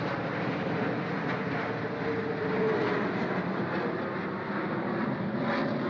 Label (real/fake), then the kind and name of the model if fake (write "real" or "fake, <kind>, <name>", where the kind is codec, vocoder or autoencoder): real